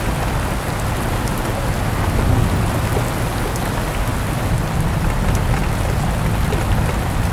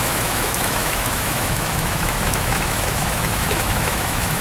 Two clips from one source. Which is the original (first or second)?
first